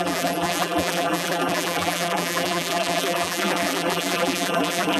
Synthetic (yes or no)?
yes